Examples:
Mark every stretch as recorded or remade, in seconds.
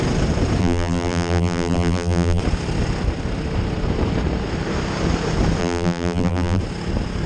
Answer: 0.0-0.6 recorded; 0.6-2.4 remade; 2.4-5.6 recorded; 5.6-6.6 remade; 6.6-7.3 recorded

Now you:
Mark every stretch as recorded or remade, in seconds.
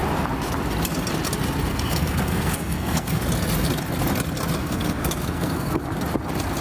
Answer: 0.0-1.7 recorded; 1.7-3.2 remade; 3.2-4.6 recorded; 4.6-5.8 remade; 5.8-6.6 recorded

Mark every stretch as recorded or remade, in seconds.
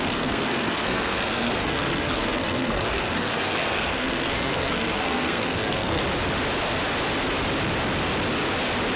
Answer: 0.0-6.0 remade; 6.0-9.0 recorded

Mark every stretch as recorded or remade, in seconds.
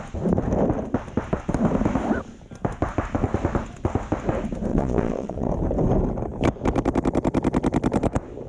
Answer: 0.0-4.7 recorded; 4.7-5.5 remade; 5.5-8.5 recorded